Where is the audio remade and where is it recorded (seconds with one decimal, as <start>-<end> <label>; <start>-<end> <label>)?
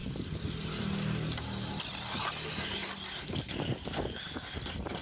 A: 0.0-3.2 recorded; 3.2-4.4 remade; 4.4-5.0 recorded